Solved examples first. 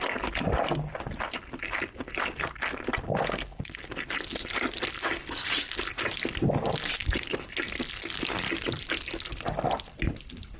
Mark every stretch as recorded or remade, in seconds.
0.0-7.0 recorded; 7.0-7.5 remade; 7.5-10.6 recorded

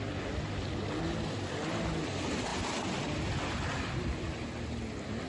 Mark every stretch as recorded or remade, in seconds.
0.0-5.3 recorded

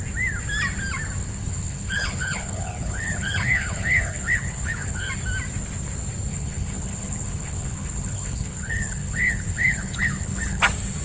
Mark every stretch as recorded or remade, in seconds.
0.0-1.2 recorded; 1.2-5.1 remade; 5.1-6.3 recorded; 6.3-10.6 remade; 10.6-11.0 recorded

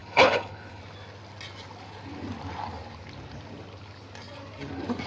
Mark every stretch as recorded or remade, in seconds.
0.0-0.8 remade; 0.8-5.1 recorded

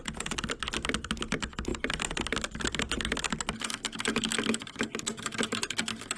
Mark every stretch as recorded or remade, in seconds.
0.0-6.2 recorded

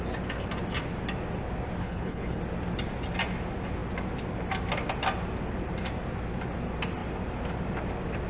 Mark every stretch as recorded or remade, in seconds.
0.0-1.8 recorded; 1.8-2.4 remade; 2.4-8.3 recorded

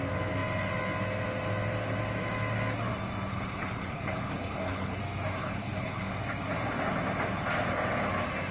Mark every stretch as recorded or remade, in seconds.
0.0-3.3 recorded; 3.3-5.0 remade; 5.0-5.4 recorded; 5.4-6.1 remade; 6.1-8.5 recorded

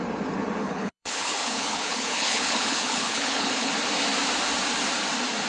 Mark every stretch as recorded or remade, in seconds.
0.0-0.6 recorded; 0.6-3.7 remade; 3.7-5.5 recorded